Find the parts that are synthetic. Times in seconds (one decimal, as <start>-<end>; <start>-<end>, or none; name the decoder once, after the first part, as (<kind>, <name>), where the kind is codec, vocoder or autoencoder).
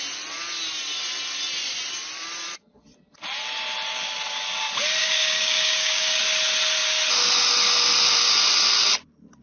5.0-6.2 (codec, DAC)